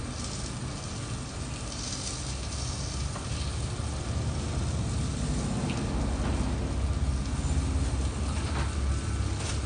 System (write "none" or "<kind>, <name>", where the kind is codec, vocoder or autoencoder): none